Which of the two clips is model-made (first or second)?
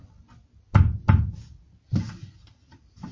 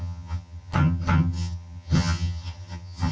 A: second